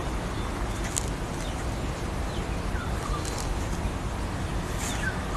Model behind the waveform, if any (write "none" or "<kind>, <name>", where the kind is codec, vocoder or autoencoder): none